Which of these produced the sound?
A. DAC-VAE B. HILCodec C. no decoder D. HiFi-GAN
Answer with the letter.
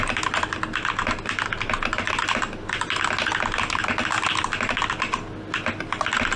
C